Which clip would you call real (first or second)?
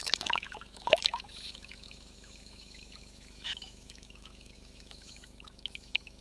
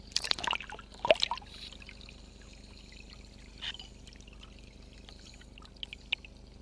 second